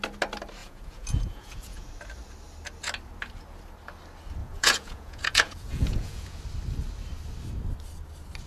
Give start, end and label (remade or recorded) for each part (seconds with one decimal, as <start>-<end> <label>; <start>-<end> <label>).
0.0-0.6 recorded; 0.6-1.9 remade; 1.9-4.4 recorded; 4.4-6.4 remade; 6.4-8.5 recorded